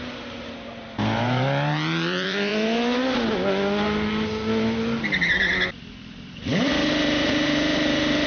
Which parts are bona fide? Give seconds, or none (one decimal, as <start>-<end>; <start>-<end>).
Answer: 2.5-5.8